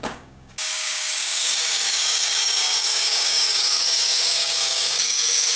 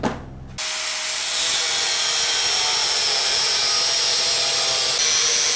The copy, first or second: first